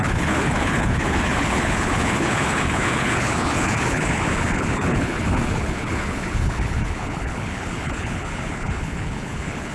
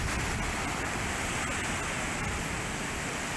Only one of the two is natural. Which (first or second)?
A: second